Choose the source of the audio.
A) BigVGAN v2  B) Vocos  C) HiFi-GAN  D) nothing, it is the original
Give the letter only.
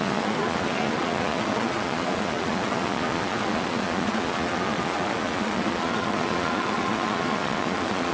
B